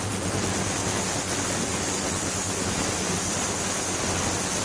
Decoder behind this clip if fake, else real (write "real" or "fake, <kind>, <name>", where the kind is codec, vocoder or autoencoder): real